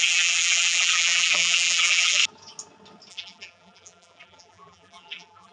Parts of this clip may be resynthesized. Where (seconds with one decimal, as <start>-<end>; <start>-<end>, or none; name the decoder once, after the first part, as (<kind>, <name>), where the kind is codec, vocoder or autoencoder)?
0.0-2.2 (vocoder, BigVGAN v2); 3.1-5.5